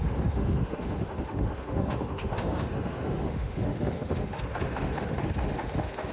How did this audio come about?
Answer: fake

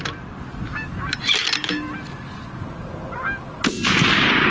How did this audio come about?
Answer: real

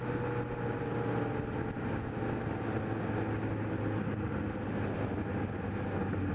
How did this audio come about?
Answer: real